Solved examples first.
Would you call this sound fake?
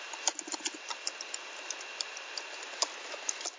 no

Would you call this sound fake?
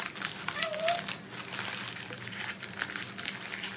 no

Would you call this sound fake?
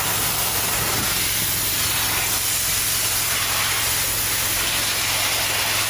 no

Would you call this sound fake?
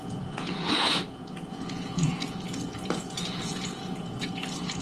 yes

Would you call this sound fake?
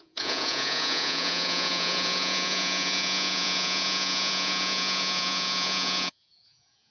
yes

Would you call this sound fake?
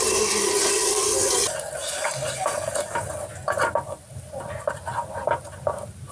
no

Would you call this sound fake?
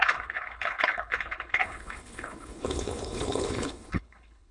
yes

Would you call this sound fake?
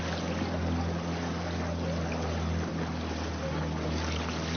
no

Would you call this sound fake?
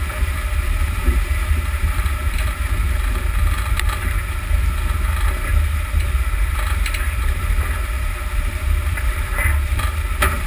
yes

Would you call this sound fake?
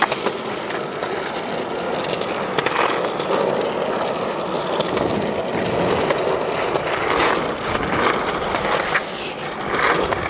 no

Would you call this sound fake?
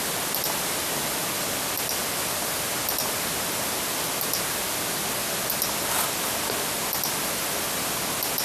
no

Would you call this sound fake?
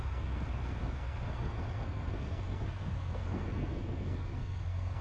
yes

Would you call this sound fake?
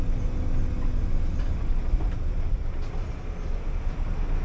no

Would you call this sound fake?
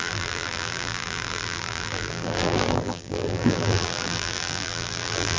yes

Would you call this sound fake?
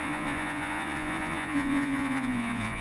yes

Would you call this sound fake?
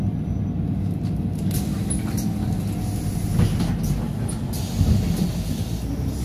no